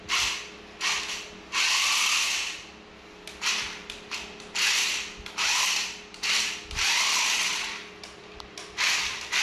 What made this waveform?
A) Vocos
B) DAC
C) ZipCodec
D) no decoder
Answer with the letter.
D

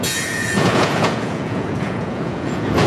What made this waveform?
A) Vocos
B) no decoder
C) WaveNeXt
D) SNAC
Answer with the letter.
A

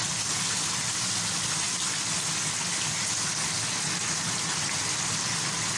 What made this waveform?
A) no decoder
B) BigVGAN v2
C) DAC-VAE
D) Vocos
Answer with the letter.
A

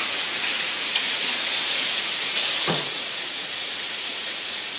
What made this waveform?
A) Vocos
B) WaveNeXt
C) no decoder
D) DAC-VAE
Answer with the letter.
A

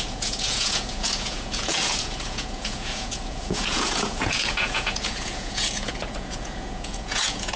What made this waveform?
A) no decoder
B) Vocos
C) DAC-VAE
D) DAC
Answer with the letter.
B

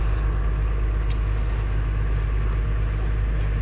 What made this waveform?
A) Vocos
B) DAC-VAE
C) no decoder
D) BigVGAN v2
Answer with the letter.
C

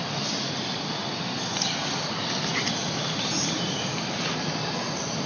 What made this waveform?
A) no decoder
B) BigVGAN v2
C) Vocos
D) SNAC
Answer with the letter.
A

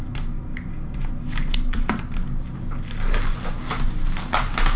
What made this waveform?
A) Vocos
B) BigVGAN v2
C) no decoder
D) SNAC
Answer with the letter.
C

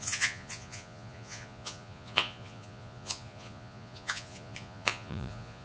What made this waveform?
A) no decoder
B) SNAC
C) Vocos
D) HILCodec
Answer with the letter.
C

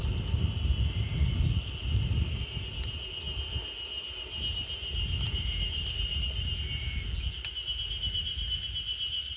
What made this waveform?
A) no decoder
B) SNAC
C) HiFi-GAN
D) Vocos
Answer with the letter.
A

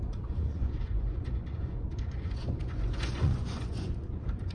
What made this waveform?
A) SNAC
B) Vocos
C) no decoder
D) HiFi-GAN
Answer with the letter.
B